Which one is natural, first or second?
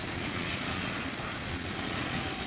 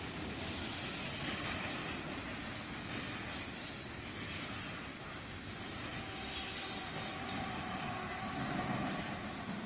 second